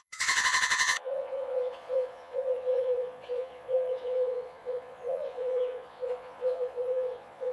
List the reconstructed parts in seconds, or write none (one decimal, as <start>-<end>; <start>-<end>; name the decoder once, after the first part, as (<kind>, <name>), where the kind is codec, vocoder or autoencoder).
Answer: 0.0-7.5 (vocoder, Vocos)